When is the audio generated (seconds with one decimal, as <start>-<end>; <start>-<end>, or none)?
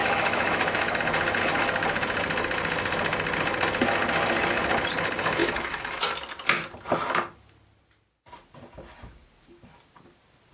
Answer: 0.0-1.0; 5.4-6.0